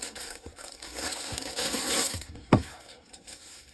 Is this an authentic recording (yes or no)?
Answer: no